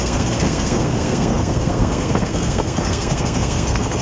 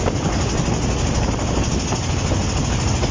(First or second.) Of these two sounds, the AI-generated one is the first